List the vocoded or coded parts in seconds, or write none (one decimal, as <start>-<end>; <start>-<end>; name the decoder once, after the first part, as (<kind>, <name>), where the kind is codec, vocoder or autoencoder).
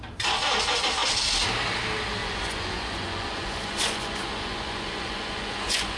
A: 2.2-6.0 (vocoder, Vocos)